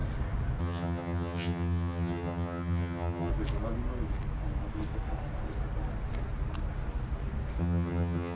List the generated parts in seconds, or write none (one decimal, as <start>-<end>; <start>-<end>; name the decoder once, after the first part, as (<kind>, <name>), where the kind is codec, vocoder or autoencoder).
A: 0.6-3.3 (vocoder, HiFi-GAN); 7.6-8.4